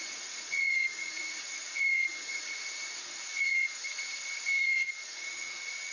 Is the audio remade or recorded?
remade